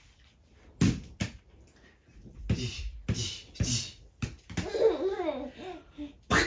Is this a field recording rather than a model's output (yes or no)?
yes